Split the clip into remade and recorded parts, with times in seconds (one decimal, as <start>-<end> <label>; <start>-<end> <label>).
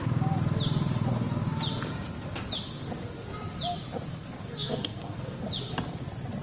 0.0-4.2 recorded; 4.2-5.4 remade; 5.4-6.4 recorded